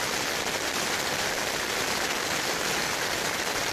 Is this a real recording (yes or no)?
yes